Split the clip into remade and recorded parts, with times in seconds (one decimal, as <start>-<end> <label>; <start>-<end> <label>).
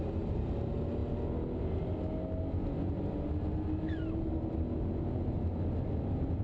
0.0-6.4 recorded